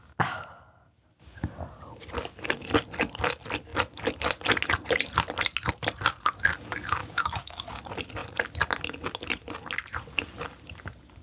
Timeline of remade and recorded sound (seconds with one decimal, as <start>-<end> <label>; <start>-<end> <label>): 0.0-7.0 recorded; 7.0-7.7 remade; 7.7-11.2 recorded

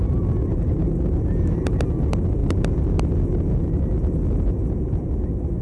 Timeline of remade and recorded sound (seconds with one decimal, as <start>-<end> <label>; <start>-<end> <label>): 0.0-5.6 recorded